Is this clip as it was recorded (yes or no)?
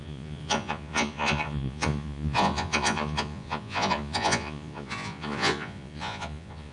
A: no